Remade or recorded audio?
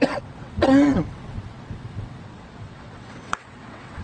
remade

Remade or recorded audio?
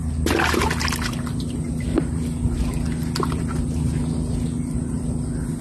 recorded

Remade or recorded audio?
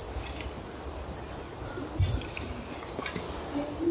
recorded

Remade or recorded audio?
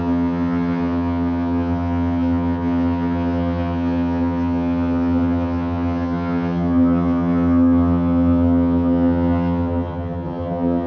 remade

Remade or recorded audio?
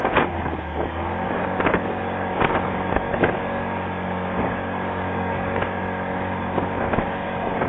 remade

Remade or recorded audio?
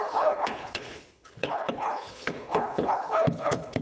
remade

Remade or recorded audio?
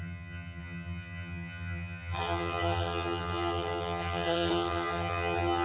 remade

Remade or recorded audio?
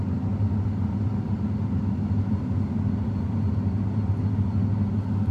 recorded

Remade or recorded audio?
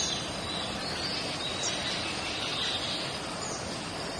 recorded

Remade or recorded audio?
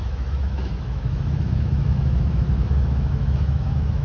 remade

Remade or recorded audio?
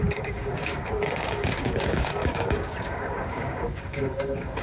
remade